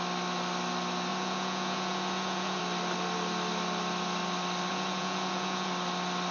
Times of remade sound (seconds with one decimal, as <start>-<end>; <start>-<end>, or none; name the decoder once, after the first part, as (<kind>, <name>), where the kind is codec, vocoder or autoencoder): 1.1-2.6 (vocoder, Vocos); 4.7-5.7